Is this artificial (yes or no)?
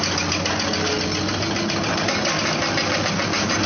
no